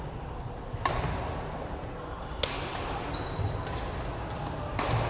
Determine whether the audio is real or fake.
real